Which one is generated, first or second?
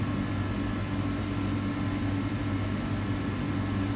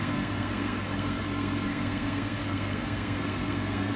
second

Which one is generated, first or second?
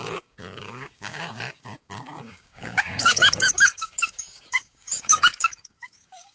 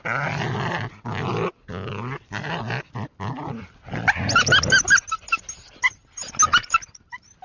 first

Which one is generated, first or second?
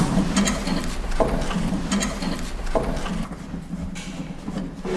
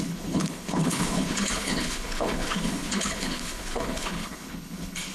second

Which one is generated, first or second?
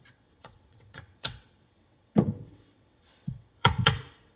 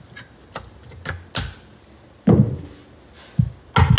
first